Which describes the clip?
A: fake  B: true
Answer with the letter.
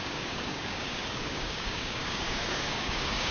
A